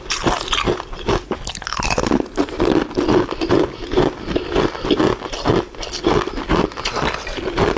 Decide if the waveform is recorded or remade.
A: recorded